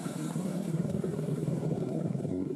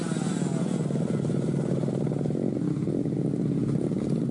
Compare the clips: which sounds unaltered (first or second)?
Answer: second